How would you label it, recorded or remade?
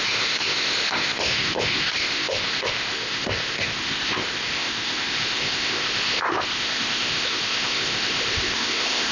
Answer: remade